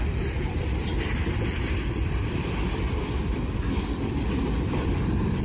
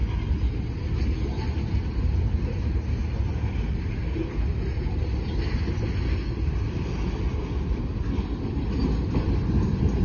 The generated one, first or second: first